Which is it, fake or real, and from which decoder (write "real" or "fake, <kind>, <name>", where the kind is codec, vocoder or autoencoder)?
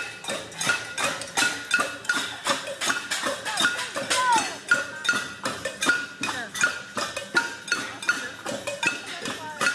real